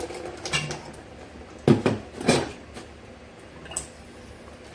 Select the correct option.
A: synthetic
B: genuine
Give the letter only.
B